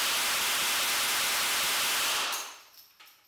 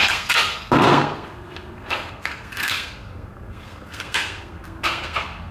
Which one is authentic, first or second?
first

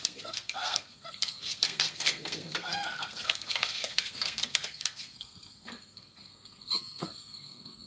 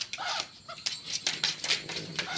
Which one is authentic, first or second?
second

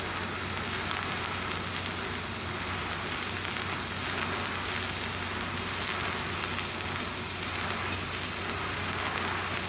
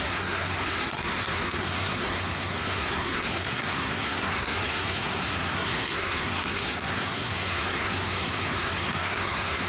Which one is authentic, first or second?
first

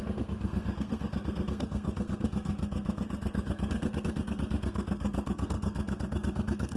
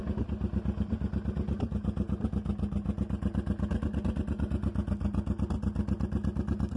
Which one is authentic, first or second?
second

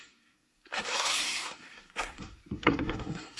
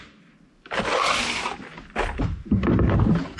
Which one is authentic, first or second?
second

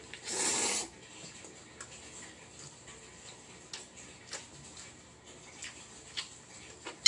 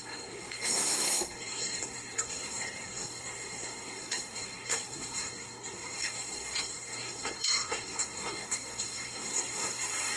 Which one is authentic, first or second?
first